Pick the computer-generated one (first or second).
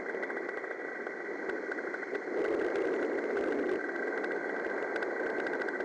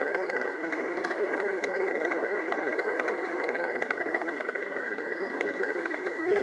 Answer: second